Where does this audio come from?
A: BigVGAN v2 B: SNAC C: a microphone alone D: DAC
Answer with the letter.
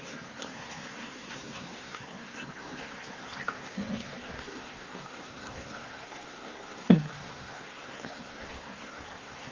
B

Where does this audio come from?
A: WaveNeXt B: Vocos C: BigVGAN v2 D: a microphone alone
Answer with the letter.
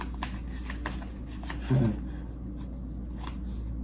D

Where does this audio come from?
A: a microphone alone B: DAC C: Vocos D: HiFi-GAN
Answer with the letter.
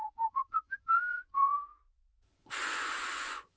C